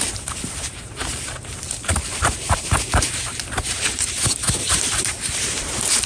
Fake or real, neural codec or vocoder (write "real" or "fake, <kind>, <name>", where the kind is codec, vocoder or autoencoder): fake, vocoder, BigVGAN v2